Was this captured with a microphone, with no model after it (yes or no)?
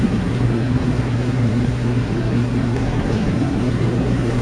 no